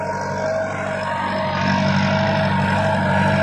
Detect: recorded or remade recorded